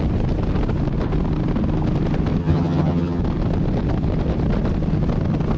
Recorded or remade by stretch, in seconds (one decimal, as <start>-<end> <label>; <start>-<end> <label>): 0.0-2.4 recorded; 2.4-3.2 remade; 3.2-5.6 recorded